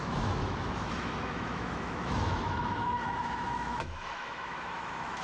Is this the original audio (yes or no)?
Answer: no